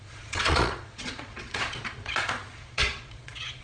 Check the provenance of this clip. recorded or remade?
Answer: remade